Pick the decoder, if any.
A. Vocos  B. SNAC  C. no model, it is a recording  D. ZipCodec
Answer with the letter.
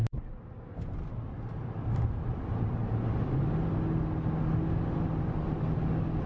C